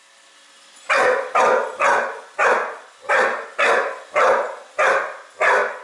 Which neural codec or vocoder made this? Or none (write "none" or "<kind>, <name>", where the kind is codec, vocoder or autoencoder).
none